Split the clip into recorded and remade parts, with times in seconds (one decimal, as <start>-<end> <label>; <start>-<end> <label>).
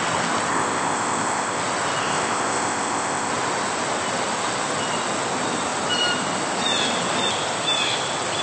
0.0-0.5 recorded; 0.5-1.6 remade; 1.6-2.0 recorded; 2.0-3.3 remade; 3.3-8.4 recorded